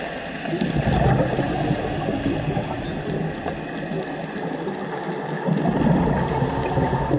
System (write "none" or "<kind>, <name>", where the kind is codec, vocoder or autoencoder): none